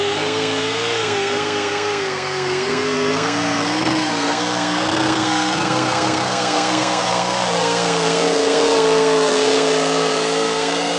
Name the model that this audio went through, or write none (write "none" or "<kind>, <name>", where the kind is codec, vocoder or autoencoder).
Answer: codec, SNAC